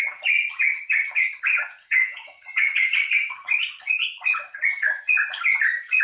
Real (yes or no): no